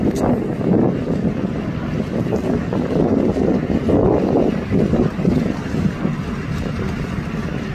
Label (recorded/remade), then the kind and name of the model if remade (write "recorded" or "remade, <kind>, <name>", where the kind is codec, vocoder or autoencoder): recorded